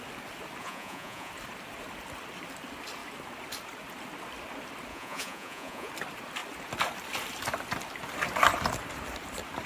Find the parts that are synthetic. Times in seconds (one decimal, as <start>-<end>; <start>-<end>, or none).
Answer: 0.6-1.3; 4.9-5.9